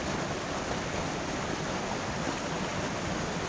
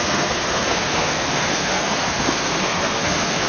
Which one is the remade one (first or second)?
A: second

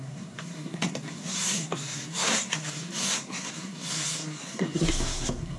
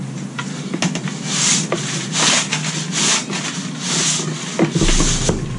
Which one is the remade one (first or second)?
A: first